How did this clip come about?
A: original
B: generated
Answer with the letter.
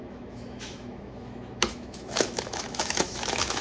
B